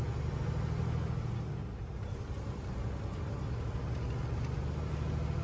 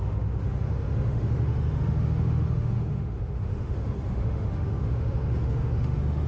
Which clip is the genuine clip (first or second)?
first